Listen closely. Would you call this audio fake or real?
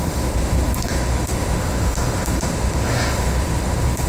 fake